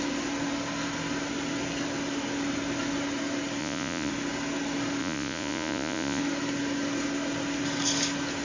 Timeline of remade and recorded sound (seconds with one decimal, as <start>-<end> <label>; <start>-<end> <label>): 0.0-3.6 recorded; 3.6-4.1 remade; 4.1-5.0 recorded; 5.0-6.2 remade; 6.2-8.4 recorded